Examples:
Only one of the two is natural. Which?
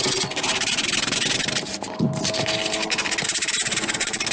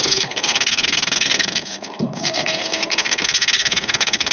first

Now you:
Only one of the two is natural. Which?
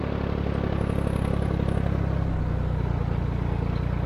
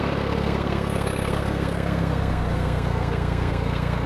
first